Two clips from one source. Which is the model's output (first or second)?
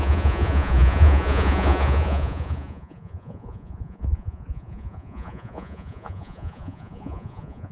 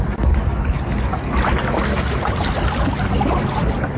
first